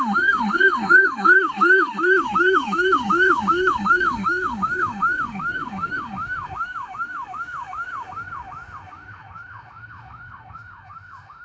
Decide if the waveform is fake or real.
fake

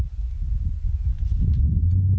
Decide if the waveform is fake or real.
real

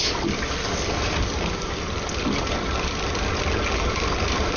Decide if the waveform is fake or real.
real